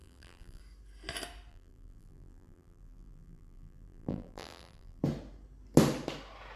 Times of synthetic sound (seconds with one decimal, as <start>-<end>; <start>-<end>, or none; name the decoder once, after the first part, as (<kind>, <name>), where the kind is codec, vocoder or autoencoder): 0.0-0.6 (vocoder, BigVGAN v2); 1.5-5.0